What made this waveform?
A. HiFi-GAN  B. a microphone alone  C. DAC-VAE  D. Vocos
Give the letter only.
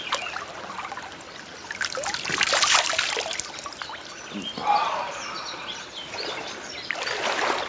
B